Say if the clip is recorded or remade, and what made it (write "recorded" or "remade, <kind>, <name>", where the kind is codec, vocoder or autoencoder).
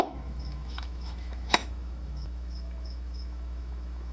remade, autoencoder, DAC-VAE